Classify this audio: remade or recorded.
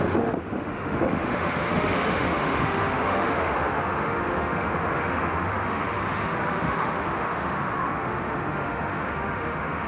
remade